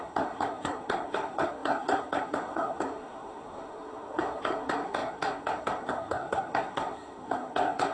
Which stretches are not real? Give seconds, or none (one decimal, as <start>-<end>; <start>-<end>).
0.0-7.9